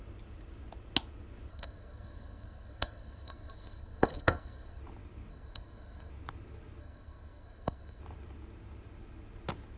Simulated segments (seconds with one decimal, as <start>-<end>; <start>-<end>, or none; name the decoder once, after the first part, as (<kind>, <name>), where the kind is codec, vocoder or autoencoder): 1.5-4.8 (codec, SNAC); 5.3-6.1; 6.8-8.0